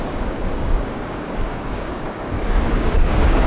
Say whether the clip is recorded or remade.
remade